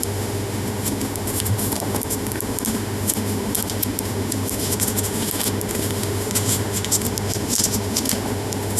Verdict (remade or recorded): remade